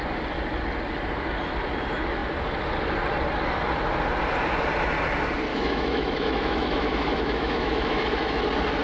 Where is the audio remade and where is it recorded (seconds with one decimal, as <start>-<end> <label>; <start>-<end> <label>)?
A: 0.0-5.5 recorded; 5.5-8.4 remade; 8.4-8.8 recorded